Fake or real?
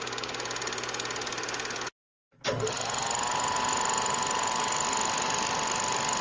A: real